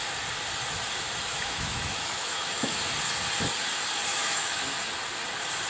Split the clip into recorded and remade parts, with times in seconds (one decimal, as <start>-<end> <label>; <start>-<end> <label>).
0.0-1.3 recorded; 1.3-2.9 remade; 2.9-4.1 recorded; 4.1-4.6 remade; 4.6-5.7 recorded